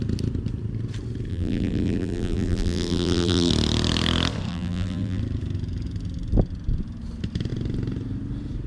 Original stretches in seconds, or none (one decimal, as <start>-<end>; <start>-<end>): 0.0-1.3; 3.5-4.5; 5.2-8.7